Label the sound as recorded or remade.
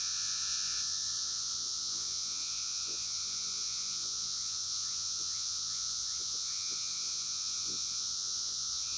remade